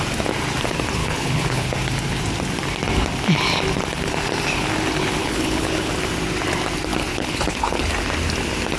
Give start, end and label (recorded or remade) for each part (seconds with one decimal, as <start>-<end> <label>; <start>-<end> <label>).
0.0-1.0 recorded; 1.0-1.7 remade; 1.7-5.2 recorded; 5.2-5.9 remade; 5.9-7.1 recorded; 7.1-7.9 remade; 7.9-8.8 recorded

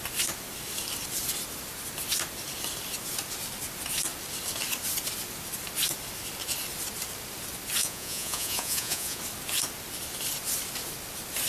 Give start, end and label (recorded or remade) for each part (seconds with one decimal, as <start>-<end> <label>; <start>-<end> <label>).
0.0-7.8 recorded; 7.8-9.2 remade; 9.2-11.5 recorded